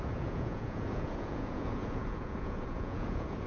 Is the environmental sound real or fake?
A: fake